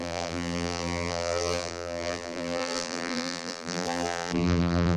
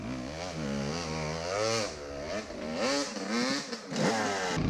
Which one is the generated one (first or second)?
first